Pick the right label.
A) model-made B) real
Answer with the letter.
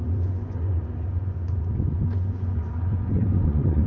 A